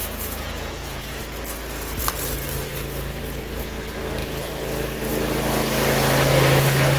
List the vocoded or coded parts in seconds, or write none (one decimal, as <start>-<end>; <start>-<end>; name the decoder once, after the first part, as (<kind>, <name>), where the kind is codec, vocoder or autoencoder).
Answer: 0.0-1.2 (vocoder, Vocos)